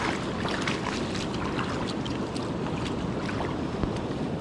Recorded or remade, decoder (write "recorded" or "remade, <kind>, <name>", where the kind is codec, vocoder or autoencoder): recorded